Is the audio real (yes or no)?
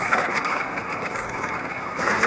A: no